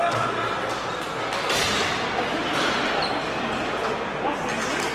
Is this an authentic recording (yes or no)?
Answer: yes